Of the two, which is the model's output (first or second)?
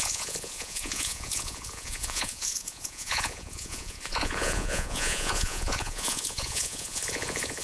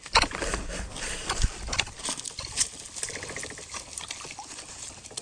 first